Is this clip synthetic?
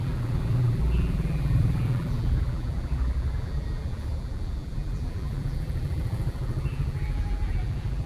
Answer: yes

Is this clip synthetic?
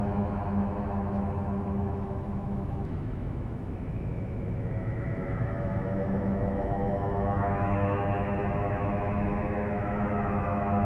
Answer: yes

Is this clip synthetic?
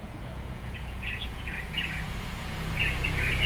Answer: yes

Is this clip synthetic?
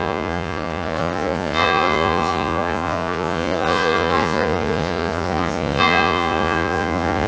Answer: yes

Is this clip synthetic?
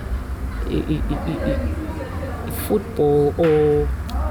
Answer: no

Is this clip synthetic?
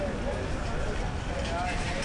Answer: no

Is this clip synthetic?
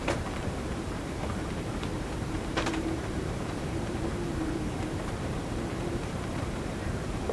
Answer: yes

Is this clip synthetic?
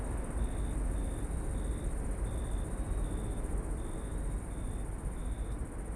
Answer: no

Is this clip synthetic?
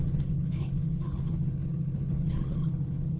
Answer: yes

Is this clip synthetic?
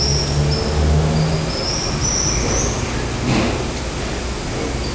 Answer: no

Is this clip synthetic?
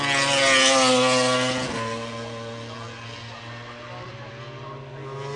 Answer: no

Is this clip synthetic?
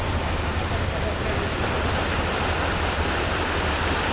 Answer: no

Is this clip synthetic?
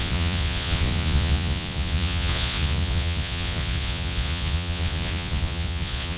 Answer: yes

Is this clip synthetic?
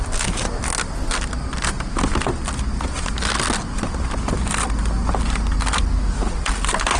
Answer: no